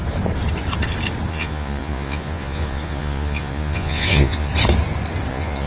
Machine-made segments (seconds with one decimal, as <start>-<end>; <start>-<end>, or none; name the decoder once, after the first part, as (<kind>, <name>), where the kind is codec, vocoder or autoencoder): 1.3-4.5 (vocoder, Vocos); 5.3-5.7